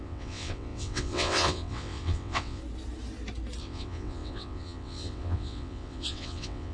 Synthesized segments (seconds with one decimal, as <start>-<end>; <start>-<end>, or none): 0.0-2.6; 3.6-6.7

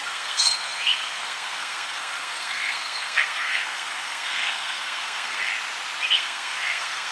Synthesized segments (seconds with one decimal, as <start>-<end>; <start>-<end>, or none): 0.0-5.5; 6.0-7.1

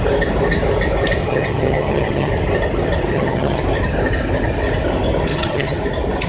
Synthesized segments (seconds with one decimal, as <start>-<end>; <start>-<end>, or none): 1.2-2.3; 3.1-3.6; 5.3-5.8

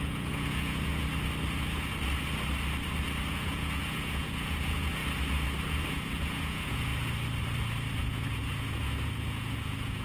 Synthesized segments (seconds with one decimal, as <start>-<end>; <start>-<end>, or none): 0.0-0.9; 3.3-5.0; 5.9-6.9; 8.0-10.0

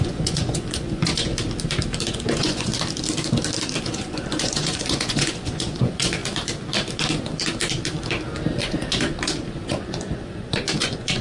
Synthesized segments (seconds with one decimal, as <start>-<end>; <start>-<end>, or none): 0.0-1.3; 2.1-2.7; 3.8-6.2; 8.6-11.2

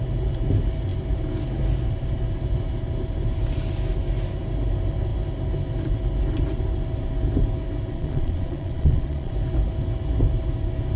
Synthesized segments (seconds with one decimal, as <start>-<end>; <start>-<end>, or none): 7.9-9.3

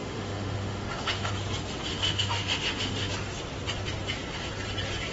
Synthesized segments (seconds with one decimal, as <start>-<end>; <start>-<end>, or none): 0.0-1.3; 1.9-3.1

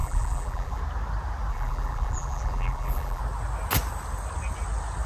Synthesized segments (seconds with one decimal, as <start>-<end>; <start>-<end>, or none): 0.0-0.8; 1.5-3.2